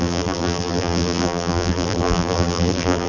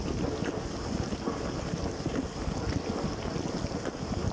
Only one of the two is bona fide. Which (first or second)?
second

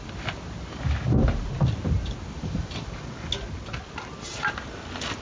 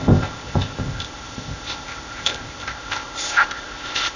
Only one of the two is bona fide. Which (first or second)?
first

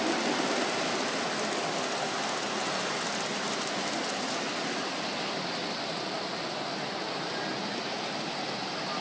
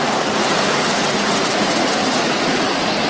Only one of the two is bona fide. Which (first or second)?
first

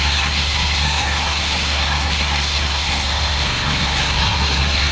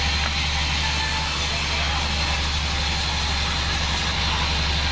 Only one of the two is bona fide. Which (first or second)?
second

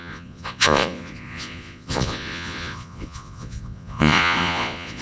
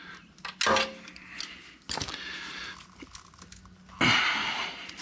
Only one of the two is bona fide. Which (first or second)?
second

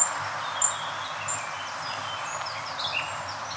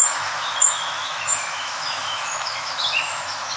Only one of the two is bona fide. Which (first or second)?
first